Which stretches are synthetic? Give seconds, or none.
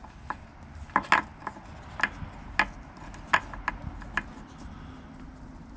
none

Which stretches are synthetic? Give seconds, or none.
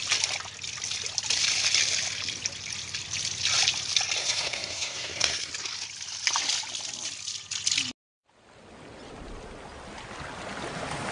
4.2-5.5 (codec, SNAC)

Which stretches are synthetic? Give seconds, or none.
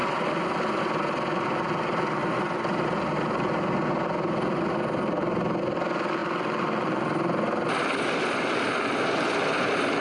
none